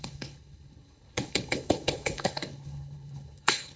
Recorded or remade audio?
remade